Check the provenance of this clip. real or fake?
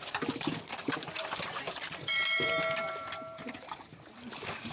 fake